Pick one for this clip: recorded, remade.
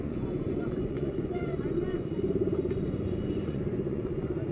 remade